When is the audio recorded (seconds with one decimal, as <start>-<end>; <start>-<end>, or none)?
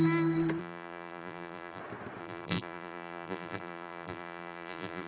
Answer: 0.0-0.6; 1.8-2.2